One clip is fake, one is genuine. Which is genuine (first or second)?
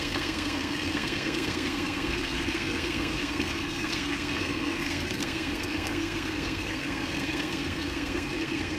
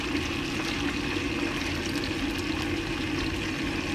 second